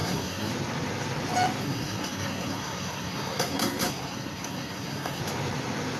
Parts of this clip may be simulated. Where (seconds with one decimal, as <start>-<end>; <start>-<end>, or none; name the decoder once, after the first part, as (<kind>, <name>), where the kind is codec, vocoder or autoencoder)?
0.0-0.5 (codec, SNAC); 1.6-5.2